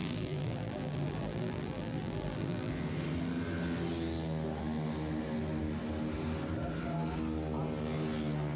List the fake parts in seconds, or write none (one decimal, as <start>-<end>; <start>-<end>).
0.0-2.7